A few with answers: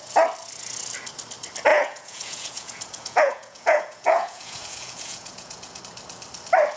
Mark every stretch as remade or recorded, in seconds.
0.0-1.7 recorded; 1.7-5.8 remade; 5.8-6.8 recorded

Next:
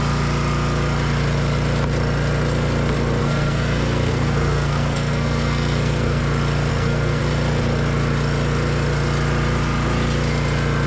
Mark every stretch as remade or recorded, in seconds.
0.0-3.2 recorded; 3.2-6.2 remade; 6.2-6.7 recorded; 6.7-7.2 remade; 7.2-10.9 recorded

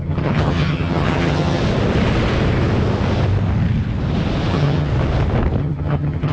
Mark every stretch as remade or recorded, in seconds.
0.0-1.6 remade; 1.6-4.5 recorded; 4.5-4.9 remade; 4.9-5.6 recorded; 5.6-6.3 remade

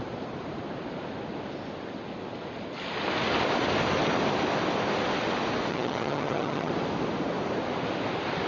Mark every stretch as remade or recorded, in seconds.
0.0-5.7 recorded; 5.7-6.7 remade; 6.7-8.5 recorded